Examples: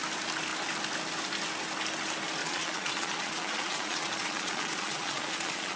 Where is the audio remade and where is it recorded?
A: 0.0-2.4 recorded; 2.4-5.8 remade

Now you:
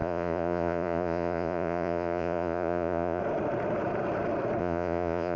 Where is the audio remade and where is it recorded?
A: 0.0-3.2 remade; 3.2-4.6 recorded; 4.6-5.4 remade

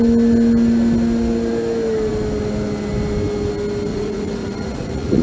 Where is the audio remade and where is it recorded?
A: 0.0-3.9 recorded; 3.9-5.2 remade

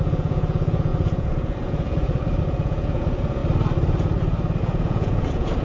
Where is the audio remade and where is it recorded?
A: 0.0-3.4 remade; 3.4-4.6 recorded; 4.6-5.6 remade

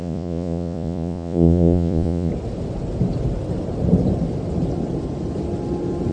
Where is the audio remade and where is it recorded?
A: 0.0-2.3 remade; 2.3-6.1 recorded